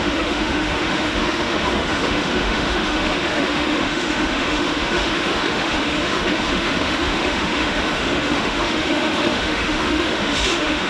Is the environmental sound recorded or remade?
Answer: remade